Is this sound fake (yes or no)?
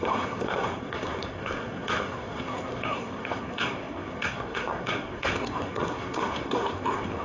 yes